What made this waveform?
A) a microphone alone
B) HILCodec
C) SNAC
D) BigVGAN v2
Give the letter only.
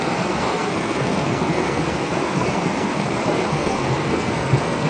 C